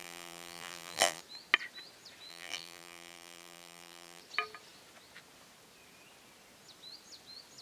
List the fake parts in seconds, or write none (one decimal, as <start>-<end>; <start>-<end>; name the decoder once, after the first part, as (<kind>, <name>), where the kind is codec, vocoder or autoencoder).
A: 0.0-1.2 (vocoder, BigVGAN v2); 2.3-4.2